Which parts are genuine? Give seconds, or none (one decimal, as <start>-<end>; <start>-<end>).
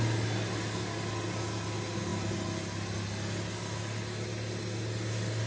0.0-5.5